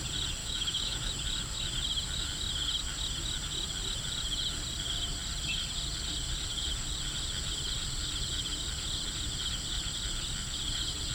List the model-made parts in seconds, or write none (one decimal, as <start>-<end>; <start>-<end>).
0.4-1.1